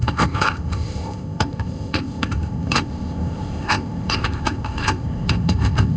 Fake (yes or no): yes